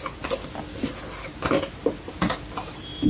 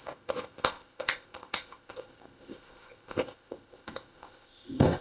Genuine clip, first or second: first